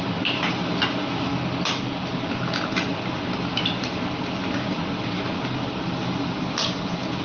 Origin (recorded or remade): recorded